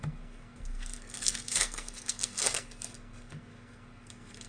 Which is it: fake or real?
fake